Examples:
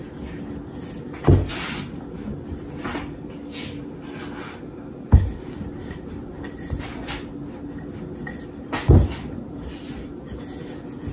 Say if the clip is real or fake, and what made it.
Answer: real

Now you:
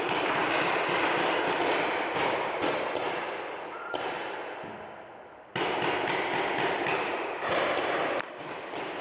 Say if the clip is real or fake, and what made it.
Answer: real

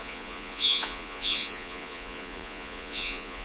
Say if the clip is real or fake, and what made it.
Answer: fake, vocoder, Vocos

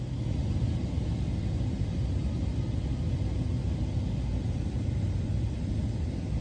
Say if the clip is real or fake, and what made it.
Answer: real